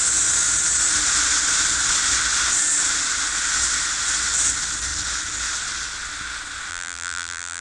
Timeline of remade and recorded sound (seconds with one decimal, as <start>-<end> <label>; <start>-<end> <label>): 0.0-6.7 recorded; 6.7-7.6 remade